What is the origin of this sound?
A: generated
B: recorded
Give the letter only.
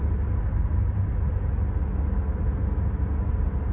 B